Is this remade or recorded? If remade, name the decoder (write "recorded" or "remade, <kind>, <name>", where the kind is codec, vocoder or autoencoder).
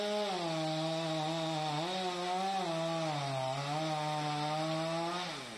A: recorded